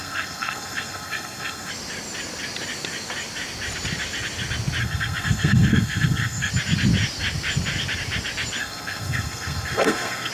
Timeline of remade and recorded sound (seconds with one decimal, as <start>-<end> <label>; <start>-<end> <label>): 0.0-1.7 remade; 1.7-4.8 recorded; 4.8-6.5 remade; 6.5-8.6 recorded; 8.6-10.3 remade